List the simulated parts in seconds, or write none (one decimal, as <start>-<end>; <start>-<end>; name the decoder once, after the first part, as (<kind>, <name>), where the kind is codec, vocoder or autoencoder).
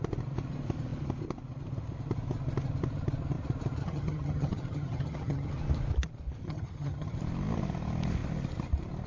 3.8-5.5 (vocoder, HiFi-GAN); 6.4-7.2